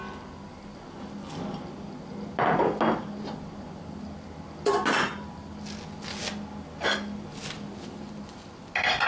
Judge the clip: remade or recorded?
recorded